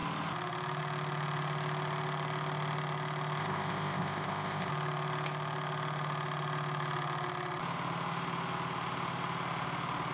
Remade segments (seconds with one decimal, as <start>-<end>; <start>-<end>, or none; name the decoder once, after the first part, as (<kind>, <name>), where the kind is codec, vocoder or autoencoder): 3.4-4.7 (codec, ZipCodec)